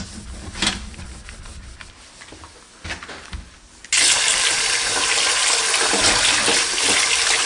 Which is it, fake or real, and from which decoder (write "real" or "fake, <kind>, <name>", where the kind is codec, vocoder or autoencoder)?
real